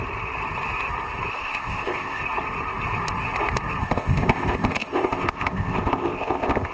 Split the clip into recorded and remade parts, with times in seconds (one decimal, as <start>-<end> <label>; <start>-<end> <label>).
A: 0.0-1.3 recorded; 1.3-2.2 remade; 2.2-3.8 recorded; 3.8-6.7 remade